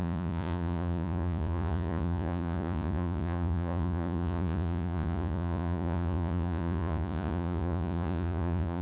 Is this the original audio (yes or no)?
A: no